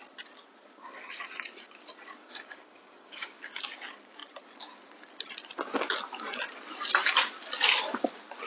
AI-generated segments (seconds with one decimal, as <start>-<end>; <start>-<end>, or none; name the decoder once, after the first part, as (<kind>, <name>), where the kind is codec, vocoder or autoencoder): 2.2-3.6 (codec, DAC)